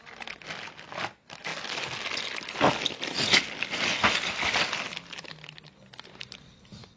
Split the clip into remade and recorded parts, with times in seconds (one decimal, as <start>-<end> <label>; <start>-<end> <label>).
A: 0.0-7.0 recorded